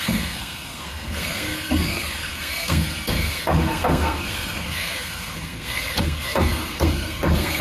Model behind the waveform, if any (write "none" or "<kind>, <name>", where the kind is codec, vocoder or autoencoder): codec, SNAC